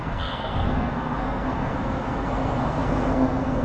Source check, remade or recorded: remade